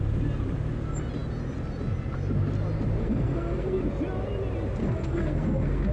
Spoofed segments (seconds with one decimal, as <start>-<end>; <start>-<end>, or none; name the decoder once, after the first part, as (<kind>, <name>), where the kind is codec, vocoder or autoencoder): 3.0-3.8 (codec, SNAC); 4.8-5.9